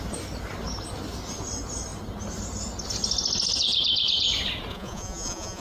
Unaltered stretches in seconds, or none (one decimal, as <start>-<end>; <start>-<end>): 0.0-4.7